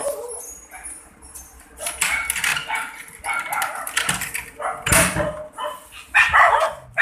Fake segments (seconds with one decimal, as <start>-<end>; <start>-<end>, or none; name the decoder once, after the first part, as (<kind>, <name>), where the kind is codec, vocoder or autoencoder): none